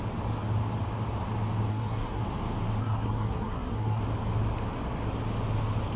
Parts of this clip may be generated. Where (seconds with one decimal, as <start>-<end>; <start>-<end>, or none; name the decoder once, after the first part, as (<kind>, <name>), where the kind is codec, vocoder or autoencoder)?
1.7-2.2 (codec, SNAC); 2.8-4.0